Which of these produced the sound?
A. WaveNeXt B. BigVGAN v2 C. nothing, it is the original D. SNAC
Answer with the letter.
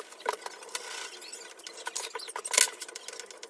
C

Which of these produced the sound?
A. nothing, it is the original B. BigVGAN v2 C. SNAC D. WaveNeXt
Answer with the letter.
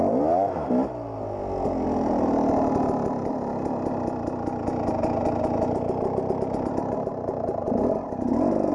A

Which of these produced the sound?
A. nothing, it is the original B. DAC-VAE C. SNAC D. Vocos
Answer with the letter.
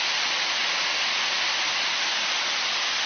A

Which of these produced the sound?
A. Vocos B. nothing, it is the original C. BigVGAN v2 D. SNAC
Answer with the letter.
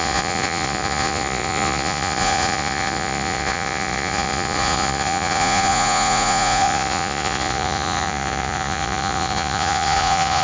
A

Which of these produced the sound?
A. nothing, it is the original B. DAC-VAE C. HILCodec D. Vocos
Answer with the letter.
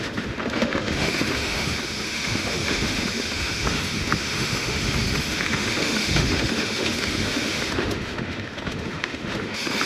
B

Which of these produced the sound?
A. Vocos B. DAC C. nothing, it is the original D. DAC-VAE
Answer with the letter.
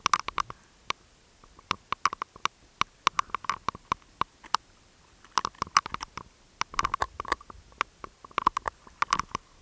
C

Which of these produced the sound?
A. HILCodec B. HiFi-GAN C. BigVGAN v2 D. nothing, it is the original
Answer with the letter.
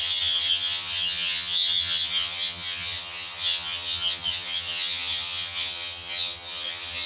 B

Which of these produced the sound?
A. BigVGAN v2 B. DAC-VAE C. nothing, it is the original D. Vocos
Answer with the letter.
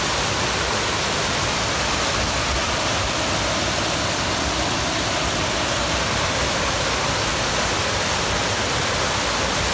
C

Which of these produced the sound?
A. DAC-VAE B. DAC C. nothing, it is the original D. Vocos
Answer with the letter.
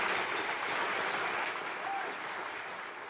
C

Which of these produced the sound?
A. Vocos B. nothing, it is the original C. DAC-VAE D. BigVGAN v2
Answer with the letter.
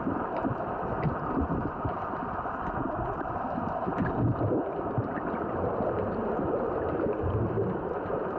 D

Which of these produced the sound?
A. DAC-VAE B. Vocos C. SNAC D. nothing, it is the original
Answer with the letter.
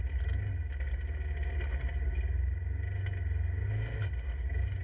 D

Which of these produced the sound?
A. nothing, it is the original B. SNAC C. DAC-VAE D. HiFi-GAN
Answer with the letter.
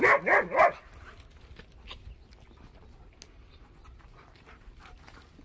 A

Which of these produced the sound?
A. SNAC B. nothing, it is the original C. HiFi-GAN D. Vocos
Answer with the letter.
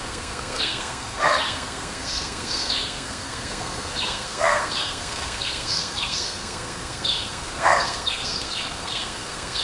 A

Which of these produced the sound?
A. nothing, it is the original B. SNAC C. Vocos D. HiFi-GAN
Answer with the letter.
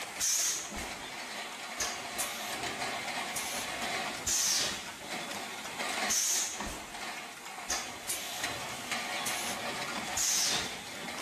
A